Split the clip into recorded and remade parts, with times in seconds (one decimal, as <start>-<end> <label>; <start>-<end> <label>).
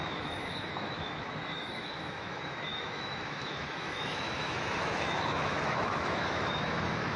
0.0-7.2 remade